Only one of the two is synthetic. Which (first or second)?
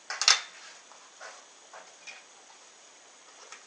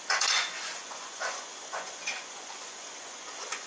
second